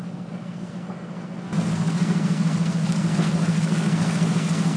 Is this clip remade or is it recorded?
remade